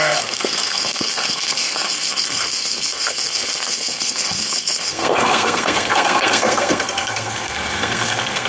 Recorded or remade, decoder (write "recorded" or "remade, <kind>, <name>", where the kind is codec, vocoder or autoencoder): remade, codec, SNAC